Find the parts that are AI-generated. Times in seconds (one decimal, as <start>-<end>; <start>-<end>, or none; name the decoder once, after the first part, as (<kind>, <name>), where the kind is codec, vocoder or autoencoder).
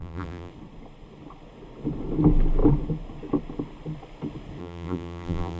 0.0-0.5 (vocoder, BigVGAN v2); 4.6-5.6